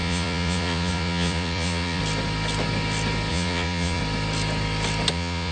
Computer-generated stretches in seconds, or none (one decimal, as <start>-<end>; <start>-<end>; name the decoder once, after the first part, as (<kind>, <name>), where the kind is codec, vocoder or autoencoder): 0.0-2.0 (vocoder, Vocos); 3.3-4.0; 5.1-5.5